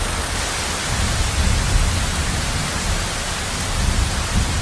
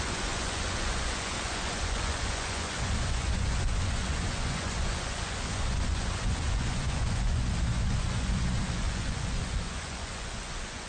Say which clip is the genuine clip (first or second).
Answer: first